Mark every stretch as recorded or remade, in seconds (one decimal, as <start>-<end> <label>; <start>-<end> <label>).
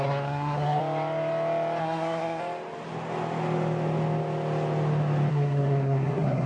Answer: 0.0-0.8 remade; 0.8-1.8 recorded; 1.8-2.4 remade; 2.4-5.3 recorded; 5.3-6.5 remade